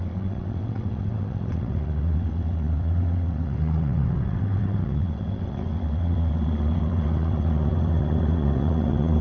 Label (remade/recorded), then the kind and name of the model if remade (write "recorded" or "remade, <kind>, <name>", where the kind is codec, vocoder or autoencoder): remade, vocoder, WaveNeXt